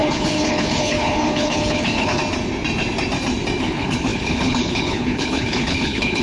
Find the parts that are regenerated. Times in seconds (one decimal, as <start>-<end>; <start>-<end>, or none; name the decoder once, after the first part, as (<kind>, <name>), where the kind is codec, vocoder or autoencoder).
0.0-2.2 (codec, HILCodec); 3.6-6.2